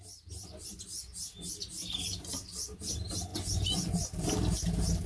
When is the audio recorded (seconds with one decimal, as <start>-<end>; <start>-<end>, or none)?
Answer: 0.0-3.3; 3.9-5.1